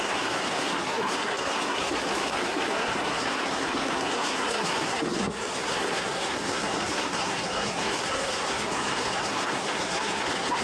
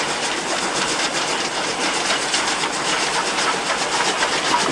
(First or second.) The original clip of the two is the second